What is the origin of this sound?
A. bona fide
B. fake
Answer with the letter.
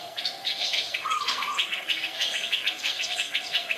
B